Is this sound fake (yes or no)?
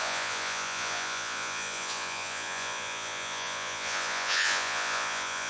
yes